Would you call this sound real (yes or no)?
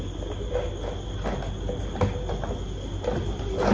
yes